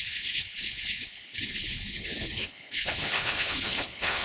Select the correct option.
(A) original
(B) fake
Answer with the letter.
B